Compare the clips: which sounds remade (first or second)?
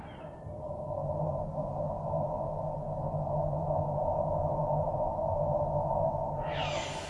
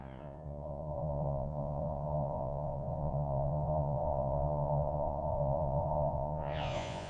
second